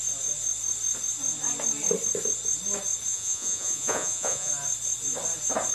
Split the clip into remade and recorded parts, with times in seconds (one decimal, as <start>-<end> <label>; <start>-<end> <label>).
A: 0.0-3.1 recorded; 3.1-4.5 remade; 4.5-5.7 recorded